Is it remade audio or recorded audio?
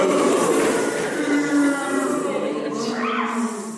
remade